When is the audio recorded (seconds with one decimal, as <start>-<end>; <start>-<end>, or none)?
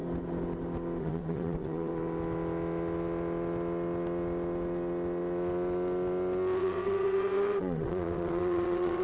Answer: 0.0-1.0; 1.9-6.6